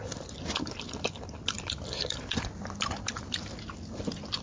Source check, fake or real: real